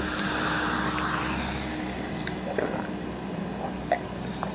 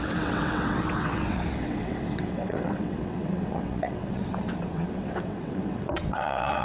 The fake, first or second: second